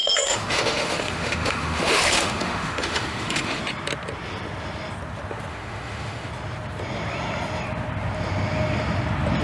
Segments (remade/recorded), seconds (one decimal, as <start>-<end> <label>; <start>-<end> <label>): 0.0-3.6 remade; 3.6-5.5 recorded; 5.5-6.3 remade; 6.3-9.4 recorded